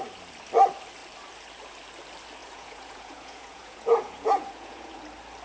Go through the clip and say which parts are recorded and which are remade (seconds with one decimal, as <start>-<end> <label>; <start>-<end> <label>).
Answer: 0.0-2.4 recorded; 2.4-5.0 remade; 5.0-5.4 recorded